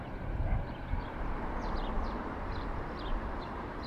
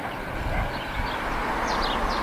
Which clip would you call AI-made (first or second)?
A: first